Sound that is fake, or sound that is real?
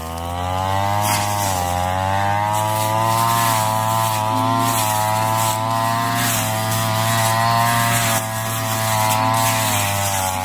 real